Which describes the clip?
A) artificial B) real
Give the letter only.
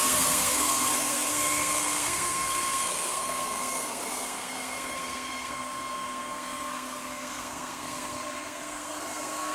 A